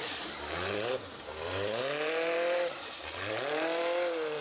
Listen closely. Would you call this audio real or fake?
fake